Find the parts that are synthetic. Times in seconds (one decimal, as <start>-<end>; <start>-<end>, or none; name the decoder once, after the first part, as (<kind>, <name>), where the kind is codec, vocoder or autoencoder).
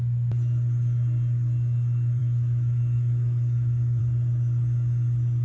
2.2-4.0 (autoencoder, DAC-VAE)